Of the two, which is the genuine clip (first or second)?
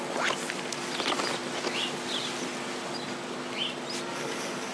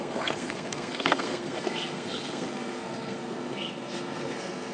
first